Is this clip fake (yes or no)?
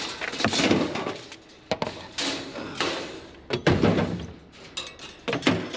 no